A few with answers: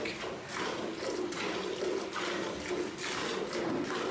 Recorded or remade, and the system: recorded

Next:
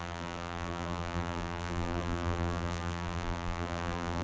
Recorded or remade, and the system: remade, vocoder, BigVGAN v2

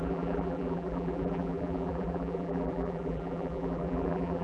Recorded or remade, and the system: remade, vocoder, BigVGAN v2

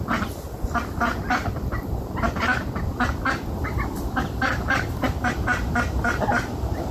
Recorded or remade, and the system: remade, vocoder, BigVGAN v2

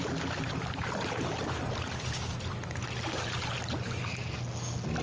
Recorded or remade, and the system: recorded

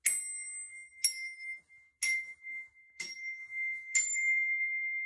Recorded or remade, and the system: recorded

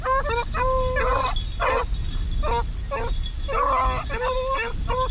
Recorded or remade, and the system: recorded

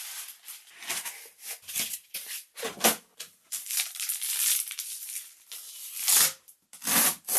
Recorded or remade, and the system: recorded